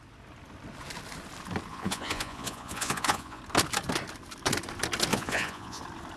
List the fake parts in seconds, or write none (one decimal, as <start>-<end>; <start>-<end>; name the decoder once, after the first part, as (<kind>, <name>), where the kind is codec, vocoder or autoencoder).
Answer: 1.7-3.4 (vocoder, Vocos); 5.1-5.8